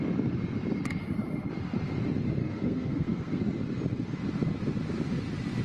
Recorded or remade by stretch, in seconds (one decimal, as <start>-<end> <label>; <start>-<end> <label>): 0.0-2.4 recorded; 2.4-3.4 remade; 3.4-5.6 recorded